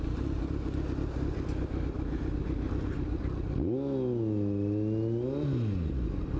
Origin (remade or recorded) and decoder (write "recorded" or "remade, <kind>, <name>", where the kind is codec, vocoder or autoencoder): recorded